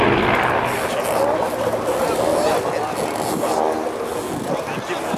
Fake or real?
real